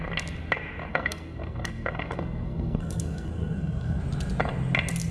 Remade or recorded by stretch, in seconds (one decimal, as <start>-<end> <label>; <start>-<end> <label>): 0.0-0.9 recorded; 0.9-4.0 remade; 4.0-5.1 recorded